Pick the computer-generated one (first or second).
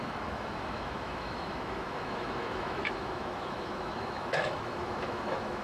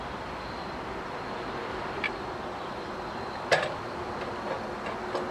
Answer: first